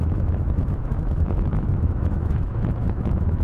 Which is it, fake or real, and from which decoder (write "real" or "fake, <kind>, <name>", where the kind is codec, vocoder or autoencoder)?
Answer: fake, autoencoder, DAC-VAE